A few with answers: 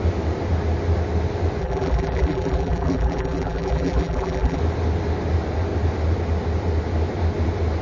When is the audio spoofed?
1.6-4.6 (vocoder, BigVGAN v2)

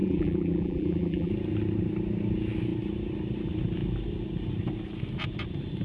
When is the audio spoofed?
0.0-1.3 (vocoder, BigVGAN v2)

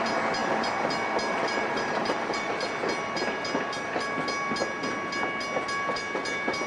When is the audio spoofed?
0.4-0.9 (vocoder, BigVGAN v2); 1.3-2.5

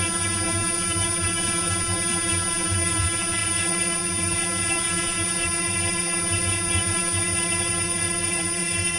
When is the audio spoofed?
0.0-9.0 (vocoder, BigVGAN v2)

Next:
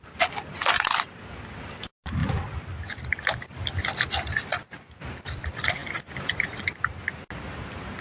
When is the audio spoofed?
none